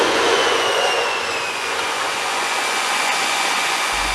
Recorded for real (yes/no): no